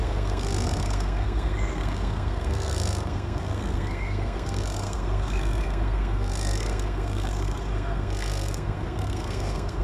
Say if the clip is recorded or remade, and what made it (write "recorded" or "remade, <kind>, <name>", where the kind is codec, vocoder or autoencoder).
remade, codec, SNAC